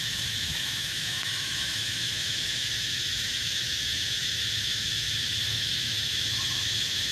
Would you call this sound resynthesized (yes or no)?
yes